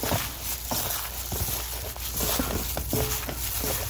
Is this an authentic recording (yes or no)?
yes